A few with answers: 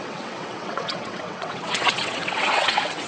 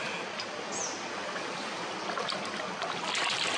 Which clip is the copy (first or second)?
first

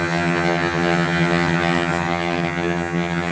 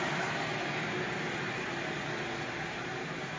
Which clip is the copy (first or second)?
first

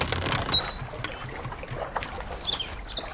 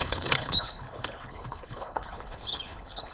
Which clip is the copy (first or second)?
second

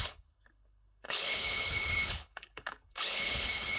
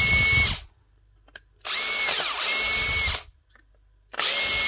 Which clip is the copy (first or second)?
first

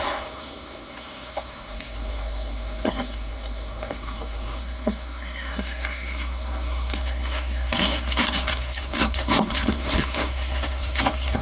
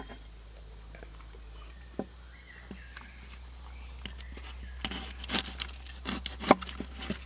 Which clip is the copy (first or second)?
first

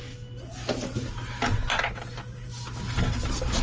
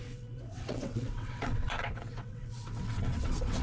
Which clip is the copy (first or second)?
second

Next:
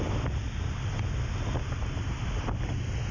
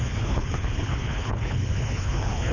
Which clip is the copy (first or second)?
second